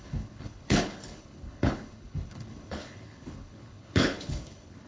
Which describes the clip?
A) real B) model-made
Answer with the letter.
B